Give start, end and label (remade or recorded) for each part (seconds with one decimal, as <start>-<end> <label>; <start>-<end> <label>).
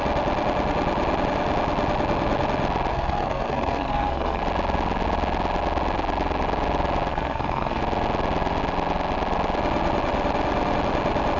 0.0-2.9 recorded; 2.9-4.4 remade; 4.4-7.1 recorded; 7.1-7.8 remade; 7.8-11.4 recorded